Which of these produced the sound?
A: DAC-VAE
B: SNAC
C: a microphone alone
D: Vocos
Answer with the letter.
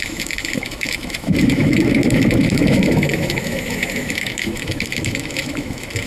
A